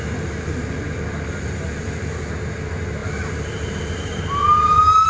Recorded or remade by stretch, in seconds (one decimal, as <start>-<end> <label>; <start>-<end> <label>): 0.0-5.1 recorded

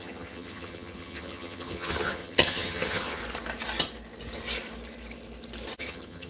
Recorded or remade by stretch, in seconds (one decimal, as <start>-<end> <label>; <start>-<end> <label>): 0.0-3.2 remade; 3.2-5.8 recorded; 5.8-6.3 remade

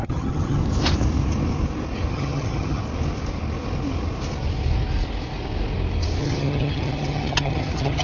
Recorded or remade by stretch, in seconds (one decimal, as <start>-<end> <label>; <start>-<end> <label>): 0.0-0.6 remade; 0.6-2.1 recorded; 2.1-2.8 remade; 2.8-6.2 recorded; 6.2-8.0 remade

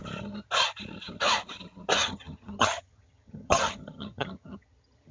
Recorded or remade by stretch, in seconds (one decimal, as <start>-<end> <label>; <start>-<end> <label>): 0.0-2.0 recorded; 2.0-5.1 remade

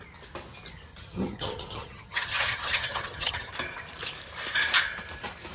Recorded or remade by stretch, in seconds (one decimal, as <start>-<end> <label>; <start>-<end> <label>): 0.0-0.9 recorded; 0.9-3.5 remade; 3.5-5.5 recorded

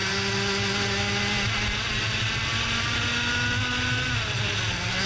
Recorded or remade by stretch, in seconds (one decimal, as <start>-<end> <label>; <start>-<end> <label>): 0.0-5.1 recorded